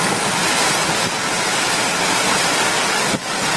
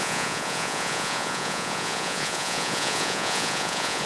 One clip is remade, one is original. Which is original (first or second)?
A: first